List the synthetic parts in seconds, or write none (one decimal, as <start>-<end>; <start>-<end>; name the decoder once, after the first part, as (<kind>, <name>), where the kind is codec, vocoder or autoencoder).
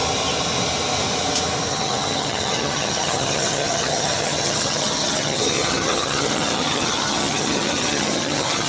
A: 1.7-8.7 (vocoder, HiFi-GAN)